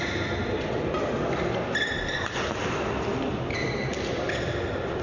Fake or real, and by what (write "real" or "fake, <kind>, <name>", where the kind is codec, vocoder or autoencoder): real